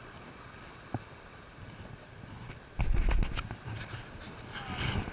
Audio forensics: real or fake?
real